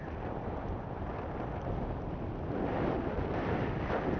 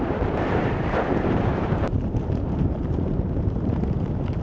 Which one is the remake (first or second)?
second